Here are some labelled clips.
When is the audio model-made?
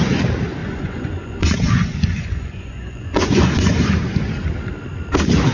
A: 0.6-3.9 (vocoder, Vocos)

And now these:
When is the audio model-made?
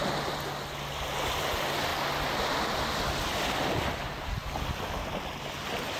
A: none